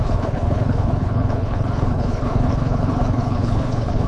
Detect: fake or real fake